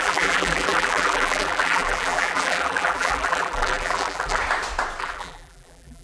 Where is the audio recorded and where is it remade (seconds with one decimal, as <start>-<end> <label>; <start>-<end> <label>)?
0.0-4.4 remade; 4.4-5.0 recorded; 5.0-6.0 remade